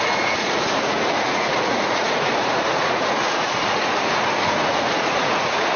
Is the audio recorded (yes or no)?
no